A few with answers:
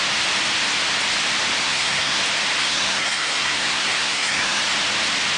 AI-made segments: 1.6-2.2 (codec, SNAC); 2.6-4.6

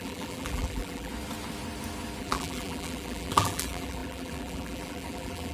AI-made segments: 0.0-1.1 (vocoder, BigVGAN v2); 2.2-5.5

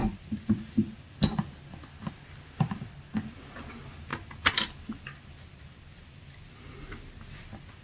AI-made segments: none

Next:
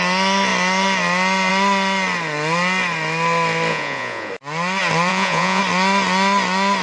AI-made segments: 3.7-4.3 (vocoder, Vocos); 5.1-5.6

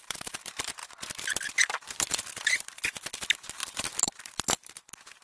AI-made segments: 0.0-5.2 (vocoder, BigVGAN v2)

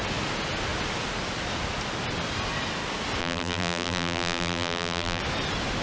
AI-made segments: 3.2-5.2 (vocoder, BigVGAN v2)

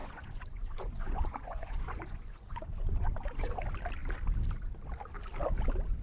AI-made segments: 0.0-3.6 (vocoder, Vocos)